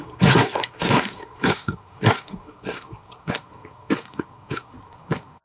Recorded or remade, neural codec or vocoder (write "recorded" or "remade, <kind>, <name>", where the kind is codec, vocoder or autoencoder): remade, codec, SNAC